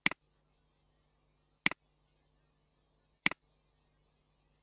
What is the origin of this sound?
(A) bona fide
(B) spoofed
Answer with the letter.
A